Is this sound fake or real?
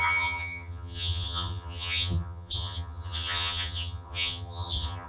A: fake